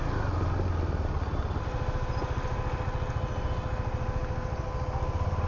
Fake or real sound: real